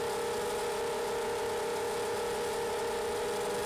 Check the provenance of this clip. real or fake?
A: real